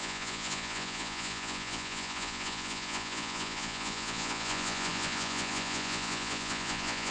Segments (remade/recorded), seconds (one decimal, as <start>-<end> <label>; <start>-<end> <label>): 0.0-7.1 remade